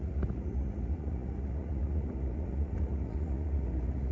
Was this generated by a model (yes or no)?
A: yes